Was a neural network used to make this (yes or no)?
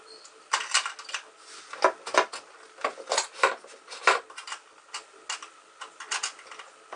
no